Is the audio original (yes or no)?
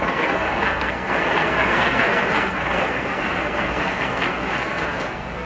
no